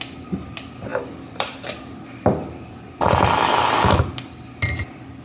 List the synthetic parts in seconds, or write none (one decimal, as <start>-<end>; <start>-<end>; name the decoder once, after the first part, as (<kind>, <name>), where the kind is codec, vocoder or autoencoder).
0.9-4.0 (vocoder, BigVGAN v2)